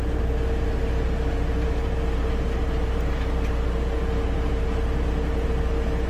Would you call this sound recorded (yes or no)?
yes